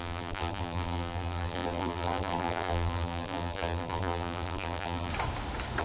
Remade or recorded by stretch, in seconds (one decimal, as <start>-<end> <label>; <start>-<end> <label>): 0.0-5.1 remade; 5.1-5.8 recorded